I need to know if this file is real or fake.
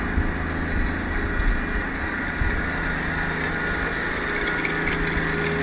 real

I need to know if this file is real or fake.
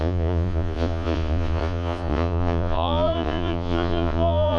fake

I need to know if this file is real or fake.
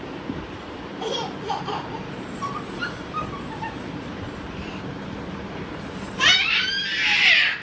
fake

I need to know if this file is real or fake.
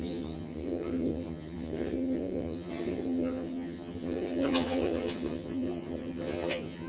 fake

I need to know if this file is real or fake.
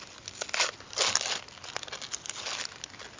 real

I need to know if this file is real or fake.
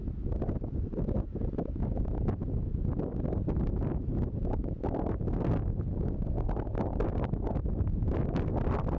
real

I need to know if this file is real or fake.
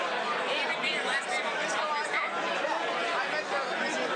real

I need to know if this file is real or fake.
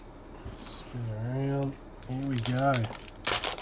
real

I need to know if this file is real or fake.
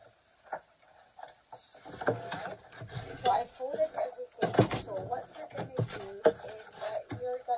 real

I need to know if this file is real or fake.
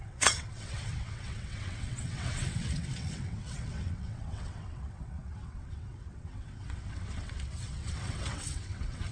fake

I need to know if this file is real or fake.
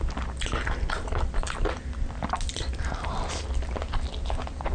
real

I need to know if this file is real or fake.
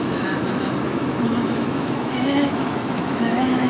fake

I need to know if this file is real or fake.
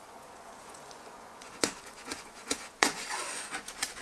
fake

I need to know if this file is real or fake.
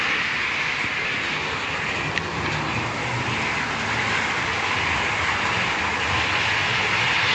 real